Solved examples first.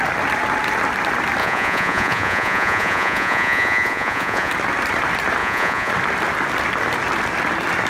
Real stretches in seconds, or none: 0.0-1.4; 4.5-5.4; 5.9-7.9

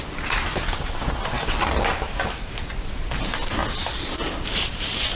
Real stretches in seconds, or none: 0.0-5.1

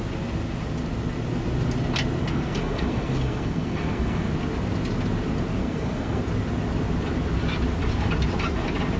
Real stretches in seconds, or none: 0.0-2.2; 4.3-5.6; 6.2-9.0

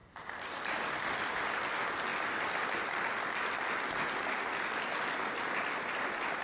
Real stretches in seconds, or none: 0.0-6.4

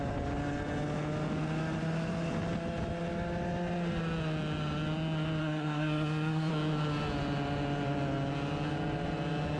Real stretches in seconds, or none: 0.0-5.4; 6.5-9.6